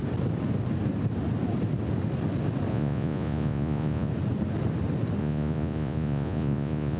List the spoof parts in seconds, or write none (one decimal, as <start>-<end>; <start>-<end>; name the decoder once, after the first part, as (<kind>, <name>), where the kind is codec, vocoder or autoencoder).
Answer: 2.7-4.1 (vocoder, Vocos); 5.2-7.0